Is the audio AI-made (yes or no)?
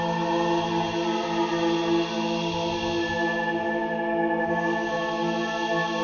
no